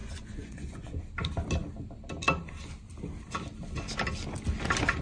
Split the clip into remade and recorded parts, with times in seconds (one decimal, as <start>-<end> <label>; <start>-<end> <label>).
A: 0.0-1.0 remade; 1.0-5.0 recorded